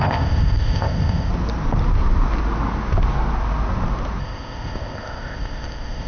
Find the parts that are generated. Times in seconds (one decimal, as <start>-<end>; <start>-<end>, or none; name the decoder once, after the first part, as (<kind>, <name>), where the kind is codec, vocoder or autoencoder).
0.0-1.3 (codec, ZipCodec); 4.2-6.1